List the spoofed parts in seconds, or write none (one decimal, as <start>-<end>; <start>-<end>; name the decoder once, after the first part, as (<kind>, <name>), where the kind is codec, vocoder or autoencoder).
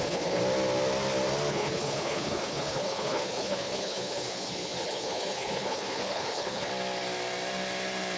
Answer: 0.0-0.4 (codec, HILCodec); 1.5-6.7